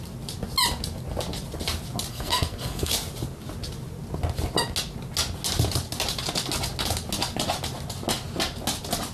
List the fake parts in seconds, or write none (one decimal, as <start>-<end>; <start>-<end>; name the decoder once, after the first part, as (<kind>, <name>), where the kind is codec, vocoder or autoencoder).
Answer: 2.1-2.9 (codec, SNAC)